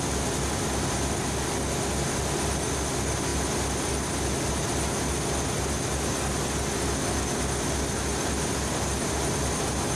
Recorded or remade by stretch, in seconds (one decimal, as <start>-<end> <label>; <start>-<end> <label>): 0.0-10.0 recorded